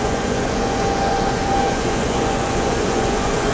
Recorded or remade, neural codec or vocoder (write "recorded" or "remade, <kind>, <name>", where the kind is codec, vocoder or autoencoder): remade, vocoder, Vocos